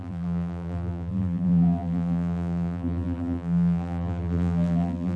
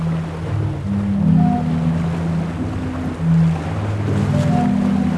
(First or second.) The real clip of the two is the second